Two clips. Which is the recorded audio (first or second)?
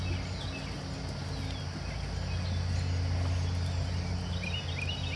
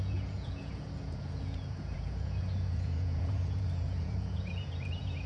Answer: first